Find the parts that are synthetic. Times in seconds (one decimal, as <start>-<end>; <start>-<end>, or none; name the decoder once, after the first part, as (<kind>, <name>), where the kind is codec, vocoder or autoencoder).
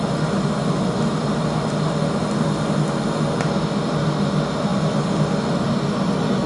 none